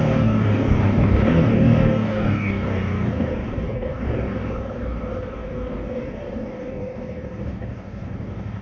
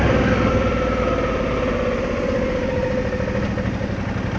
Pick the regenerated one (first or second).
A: first